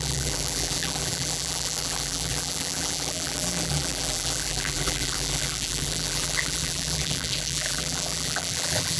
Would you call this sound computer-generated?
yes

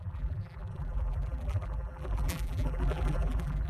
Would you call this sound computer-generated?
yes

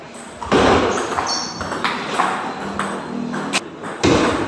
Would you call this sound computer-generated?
no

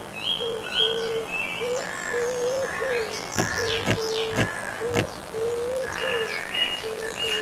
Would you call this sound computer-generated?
yes